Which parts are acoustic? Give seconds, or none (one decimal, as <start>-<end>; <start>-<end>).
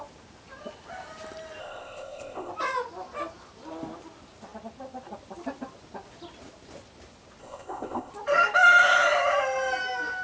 0.0-1.6; 2.5-7.4; 8.1-10.2